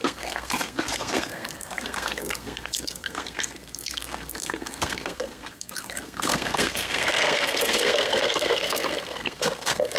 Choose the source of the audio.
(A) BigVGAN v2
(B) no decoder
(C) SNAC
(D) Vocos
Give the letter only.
C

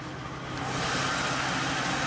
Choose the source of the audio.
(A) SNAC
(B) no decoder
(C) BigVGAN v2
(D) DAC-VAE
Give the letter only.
B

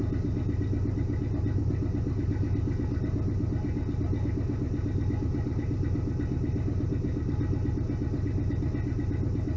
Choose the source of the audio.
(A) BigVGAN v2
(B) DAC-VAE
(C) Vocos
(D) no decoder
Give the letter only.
D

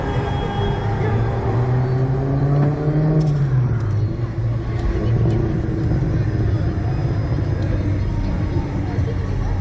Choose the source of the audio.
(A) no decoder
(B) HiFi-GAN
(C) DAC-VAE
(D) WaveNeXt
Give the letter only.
A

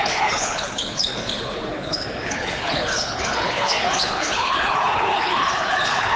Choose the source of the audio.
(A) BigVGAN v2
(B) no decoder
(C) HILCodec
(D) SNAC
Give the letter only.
C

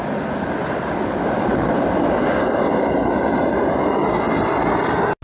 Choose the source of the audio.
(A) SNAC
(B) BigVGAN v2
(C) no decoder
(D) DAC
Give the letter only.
C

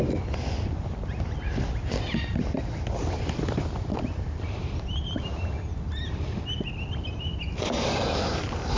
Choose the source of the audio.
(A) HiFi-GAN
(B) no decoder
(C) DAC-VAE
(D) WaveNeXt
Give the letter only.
B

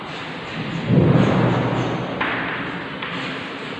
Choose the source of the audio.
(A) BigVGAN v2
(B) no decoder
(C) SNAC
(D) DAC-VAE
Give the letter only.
B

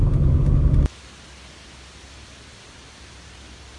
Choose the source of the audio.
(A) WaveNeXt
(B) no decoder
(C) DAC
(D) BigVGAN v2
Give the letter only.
B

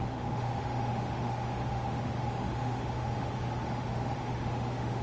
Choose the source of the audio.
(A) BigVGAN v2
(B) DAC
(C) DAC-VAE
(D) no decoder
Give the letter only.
C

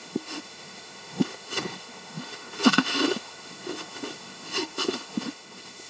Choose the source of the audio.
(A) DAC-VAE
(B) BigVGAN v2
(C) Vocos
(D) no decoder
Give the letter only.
A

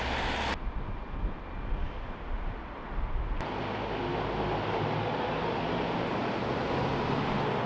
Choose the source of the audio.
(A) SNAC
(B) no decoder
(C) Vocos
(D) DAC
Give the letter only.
B